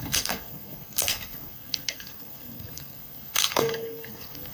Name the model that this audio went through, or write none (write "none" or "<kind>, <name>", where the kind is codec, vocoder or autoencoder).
codec, SNAC